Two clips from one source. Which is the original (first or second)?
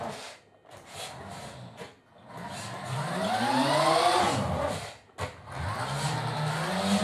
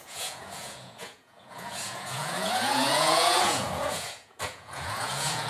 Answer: first